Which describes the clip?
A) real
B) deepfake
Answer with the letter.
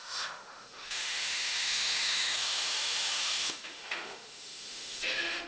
B